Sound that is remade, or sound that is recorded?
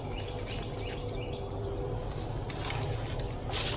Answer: recorded